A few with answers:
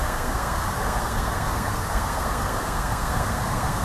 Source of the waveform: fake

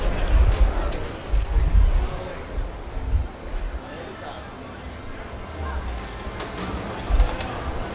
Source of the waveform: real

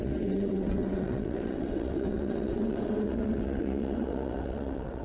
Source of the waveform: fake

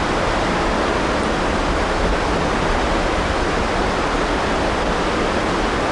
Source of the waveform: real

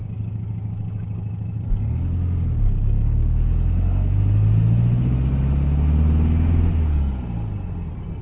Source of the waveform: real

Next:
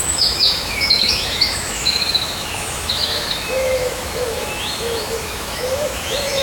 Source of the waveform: fake